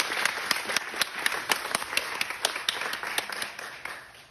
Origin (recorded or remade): recorded